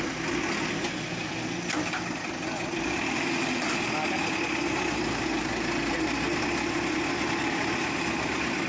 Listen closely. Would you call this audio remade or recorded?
recorded